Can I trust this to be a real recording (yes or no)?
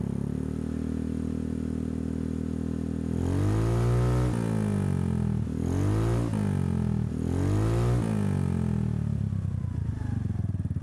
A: yes